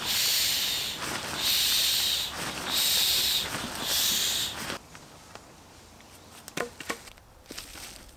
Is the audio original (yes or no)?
no